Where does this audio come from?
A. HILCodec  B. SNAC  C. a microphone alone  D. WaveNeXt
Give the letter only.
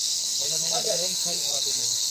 B